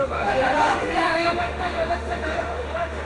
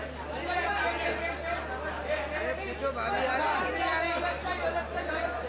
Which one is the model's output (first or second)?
first